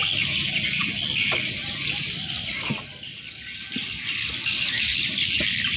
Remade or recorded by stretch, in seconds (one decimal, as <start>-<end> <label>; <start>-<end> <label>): 0.0-5.8 recorded